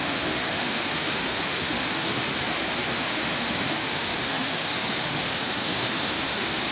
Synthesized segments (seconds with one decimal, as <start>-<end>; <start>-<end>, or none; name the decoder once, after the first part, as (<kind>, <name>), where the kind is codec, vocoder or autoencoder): 0.0-2.3 (autoencoder, DAC-VAE); 2.9-6.7

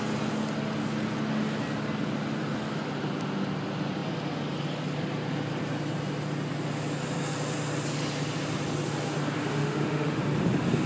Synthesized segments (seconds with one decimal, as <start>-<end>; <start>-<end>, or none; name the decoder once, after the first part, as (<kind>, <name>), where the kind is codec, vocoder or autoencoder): 9.6-10.2 (autoencoder, DAC-VAE)

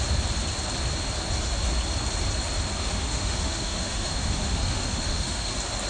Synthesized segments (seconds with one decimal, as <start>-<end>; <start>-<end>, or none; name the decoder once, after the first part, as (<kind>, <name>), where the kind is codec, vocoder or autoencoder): 2.8-5.5 (autoencoder, DAC-VAE)